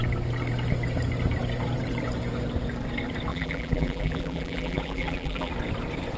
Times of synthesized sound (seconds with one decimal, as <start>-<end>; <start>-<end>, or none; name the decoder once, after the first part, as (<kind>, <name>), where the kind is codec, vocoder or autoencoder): 3.3-5.5 (vocoder, BigVGAN v2)